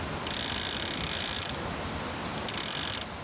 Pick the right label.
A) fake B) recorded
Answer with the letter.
B